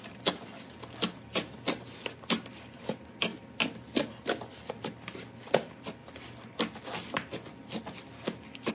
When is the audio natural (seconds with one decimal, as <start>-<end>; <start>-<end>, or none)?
0.0-8.7